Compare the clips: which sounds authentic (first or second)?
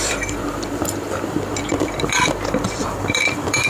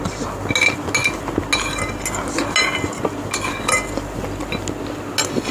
second